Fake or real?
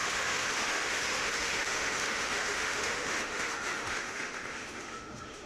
fake